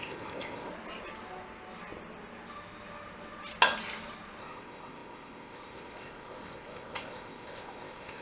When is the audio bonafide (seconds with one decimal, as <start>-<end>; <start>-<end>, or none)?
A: 0.7-4.4